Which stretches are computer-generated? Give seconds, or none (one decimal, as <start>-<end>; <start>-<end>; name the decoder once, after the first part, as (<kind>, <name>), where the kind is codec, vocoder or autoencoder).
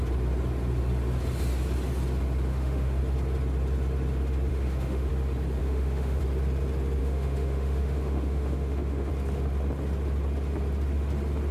2.5-3.0 (autoencoder, DAC-VAE); 4.5-5.1; 5.6-6.2; 7.0-9.1